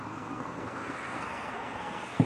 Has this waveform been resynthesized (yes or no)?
yes